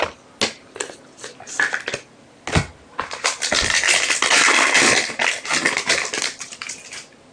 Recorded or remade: recorded